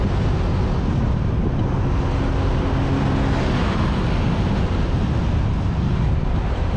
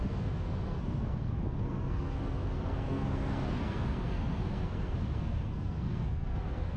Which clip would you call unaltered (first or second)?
first